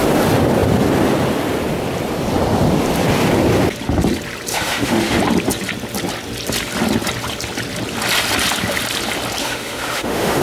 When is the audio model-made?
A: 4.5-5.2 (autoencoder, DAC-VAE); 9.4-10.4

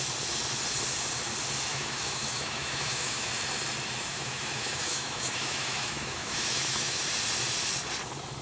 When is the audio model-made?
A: 1.7-3.3 (autoencoder, DAC-VAE); 4.1-7.0

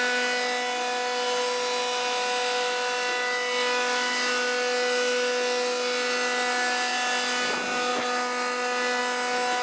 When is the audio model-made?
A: none

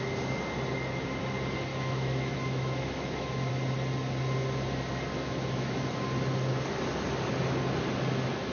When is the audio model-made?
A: 1.7-3.5 (autoencoder, DAC-VAE); 5.1-6.0

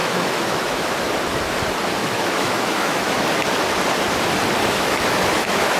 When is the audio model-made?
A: 0.0-0.9 (autoencoder, DAC-VAE); 2.0-3.2; 4.6-5.8